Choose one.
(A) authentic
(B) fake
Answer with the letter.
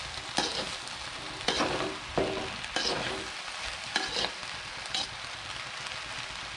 A